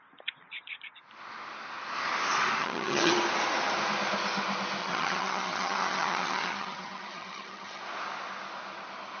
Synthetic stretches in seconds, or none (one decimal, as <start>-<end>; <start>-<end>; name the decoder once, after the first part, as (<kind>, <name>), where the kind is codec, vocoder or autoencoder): 2.6-3.1 (vocoder, HiFi-GAN); 4.8-7.8